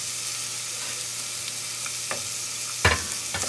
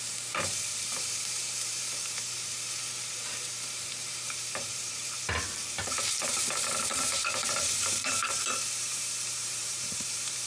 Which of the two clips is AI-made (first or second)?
second